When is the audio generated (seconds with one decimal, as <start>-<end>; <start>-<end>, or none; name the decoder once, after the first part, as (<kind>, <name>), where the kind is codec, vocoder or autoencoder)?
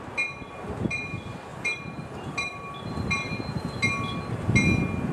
1.5-3.6 (vocoder, BigVGAN v2)